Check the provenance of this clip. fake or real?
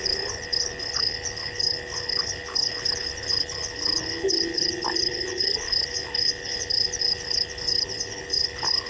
fake